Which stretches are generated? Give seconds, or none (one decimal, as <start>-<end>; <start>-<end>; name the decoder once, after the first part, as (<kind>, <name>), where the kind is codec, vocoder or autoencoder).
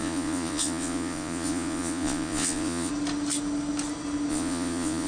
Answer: 0.0-2.9 (vocoder, Vocos); 4.3-5.1